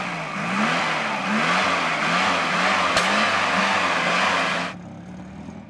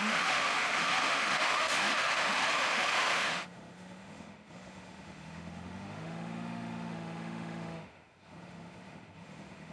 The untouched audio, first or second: first